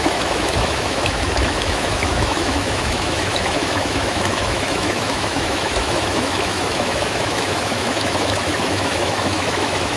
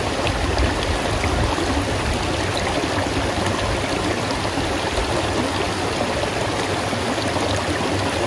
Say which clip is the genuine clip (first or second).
second